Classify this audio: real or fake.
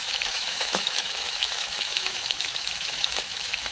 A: fake